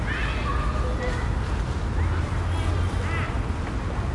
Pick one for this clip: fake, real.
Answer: real